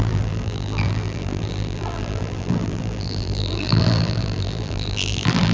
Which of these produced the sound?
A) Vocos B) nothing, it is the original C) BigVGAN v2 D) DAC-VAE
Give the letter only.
C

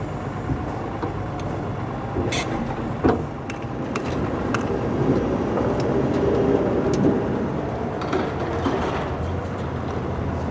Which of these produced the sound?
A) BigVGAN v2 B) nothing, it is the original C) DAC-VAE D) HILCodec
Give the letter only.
B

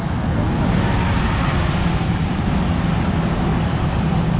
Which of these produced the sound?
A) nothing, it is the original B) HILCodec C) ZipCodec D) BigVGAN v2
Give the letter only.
A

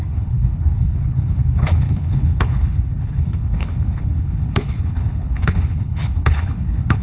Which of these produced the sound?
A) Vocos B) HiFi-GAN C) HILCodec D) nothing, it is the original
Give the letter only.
C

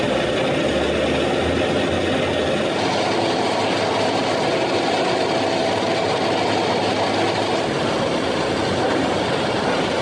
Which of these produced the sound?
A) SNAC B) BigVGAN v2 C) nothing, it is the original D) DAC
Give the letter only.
C